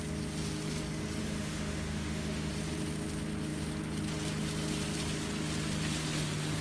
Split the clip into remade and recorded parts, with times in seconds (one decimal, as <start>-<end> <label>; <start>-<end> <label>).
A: 0.0-1.2 recorded; 1.2-2.5 remade; 2.5-6.6 recorded